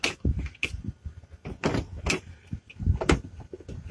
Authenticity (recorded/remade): recorded